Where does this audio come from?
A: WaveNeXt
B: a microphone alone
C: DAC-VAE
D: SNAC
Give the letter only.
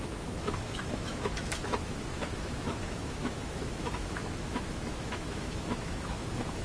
C